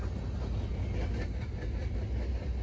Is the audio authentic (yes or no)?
yes